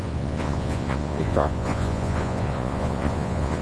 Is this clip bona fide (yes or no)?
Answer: no